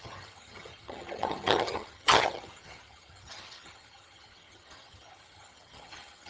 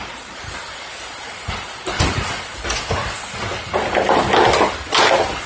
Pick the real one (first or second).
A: second